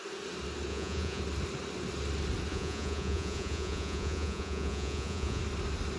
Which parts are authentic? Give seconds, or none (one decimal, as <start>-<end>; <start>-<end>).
0.0-0.7; 1.2-2.5; 5.4-6.0